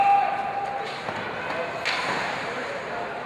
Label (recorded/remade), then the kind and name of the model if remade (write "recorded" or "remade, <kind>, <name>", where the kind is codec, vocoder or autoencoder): recorded